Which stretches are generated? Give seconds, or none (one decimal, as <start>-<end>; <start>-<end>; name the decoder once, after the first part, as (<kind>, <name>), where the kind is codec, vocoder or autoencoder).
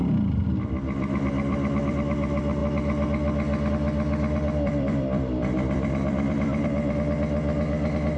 0.0-2.6 (vocoder, BigVGAN v2); 3.7-8.2